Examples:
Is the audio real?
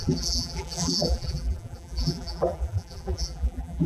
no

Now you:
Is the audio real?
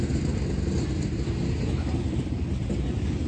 yes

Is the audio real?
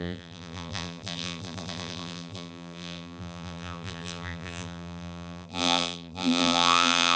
no